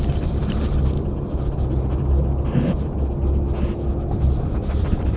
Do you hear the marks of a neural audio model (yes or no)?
no